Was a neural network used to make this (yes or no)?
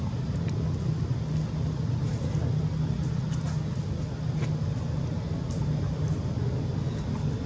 no